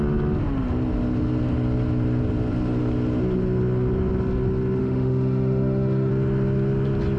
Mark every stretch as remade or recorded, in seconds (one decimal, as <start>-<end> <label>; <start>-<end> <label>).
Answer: 0.0-4.8 recorded; 4.8-6.1 remade; 6.1-7.2 recorded